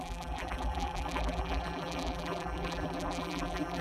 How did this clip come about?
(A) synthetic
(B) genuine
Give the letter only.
A